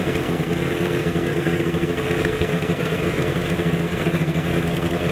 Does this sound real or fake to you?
fake